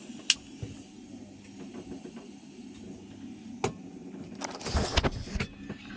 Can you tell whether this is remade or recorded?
recorded